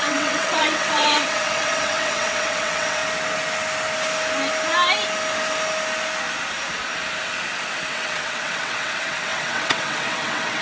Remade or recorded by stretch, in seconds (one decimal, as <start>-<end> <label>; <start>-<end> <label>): 0.0-3.0 remade; 3.0-7.9 recorded; 7.9-10.6 remade